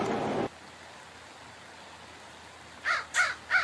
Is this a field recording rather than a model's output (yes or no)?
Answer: yes